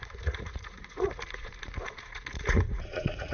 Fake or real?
fake